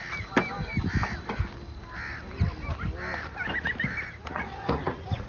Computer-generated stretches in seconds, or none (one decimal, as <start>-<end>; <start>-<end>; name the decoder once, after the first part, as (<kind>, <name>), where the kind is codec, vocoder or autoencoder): 4.3-5.3 (vocoder, Vocos)